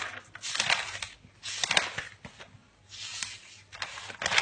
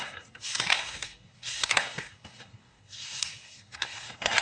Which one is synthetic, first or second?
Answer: second